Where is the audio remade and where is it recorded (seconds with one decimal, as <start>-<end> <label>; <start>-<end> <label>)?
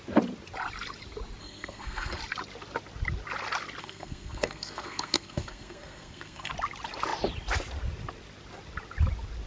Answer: 0.0-1.4 recorded; 1.4-2.2 remade; 2.2-3.8 recorded; 3.8-6.5 remade; 6.5-9.5 recorded